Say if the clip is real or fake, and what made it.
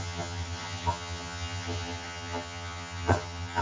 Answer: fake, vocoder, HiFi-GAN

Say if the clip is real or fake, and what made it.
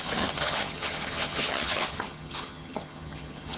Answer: fake, vocoder, HiFi-GAN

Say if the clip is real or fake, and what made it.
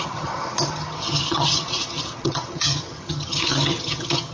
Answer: fake, vocoder, HiFi-GAN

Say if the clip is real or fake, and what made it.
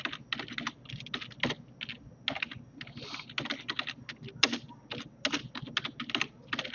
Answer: real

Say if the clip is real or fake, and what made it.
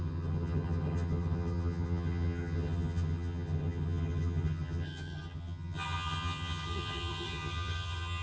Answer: fake, vocoder, HiFi-GAN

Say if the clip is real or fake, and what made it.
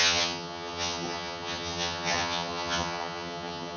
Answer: fake, vocoder, HiFi-GAN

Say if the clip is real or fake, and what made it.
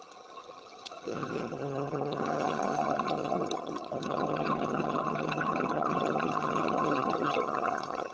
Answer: fake, vocoder, HiFi-GAN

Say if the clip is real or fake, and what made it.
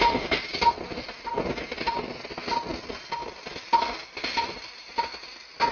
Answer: real